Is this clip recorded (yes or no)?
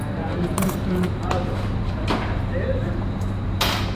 no